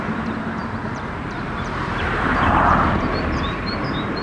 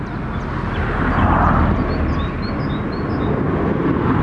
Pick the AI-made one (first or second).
first